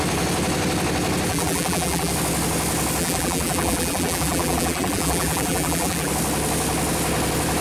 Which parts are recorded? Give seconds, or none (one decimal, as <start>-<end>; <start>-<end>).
0.0-1.3; 2.1-3.0; 6.1-7.6